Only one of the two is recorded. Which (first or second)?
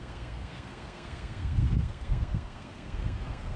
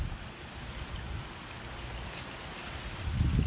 second